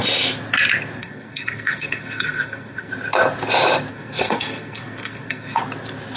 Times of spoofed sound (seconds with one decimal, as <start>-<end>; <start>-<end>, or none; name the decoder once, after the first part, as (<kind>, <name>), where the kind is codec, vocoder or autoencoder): 1.0-2.9 (codec, SNAC); 3.9-5.6